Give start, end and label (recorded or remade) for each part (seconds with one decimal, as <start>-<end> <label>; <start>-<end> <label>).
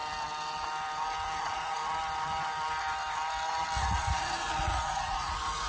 0.0-1.4 recorded; 1.4-1.8 remade; 1.8-3.8 recorded; 3.8-5.7 remade